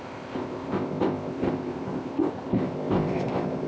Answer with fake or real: fake